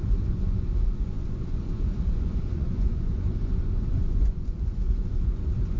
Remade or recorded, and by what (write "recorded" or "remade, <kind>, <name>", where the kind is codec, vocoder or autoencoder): remade, vocoder, Vocos